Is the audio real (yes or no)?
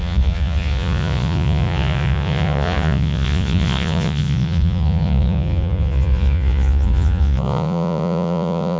no